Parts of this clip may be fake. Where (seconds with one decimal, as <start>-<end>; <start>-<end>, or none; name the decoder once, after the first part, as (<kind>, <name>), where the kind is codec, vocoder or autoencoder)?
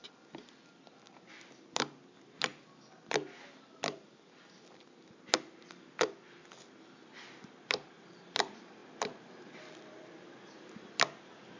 8.8-10.1 (vocoder, BigVGAN v2)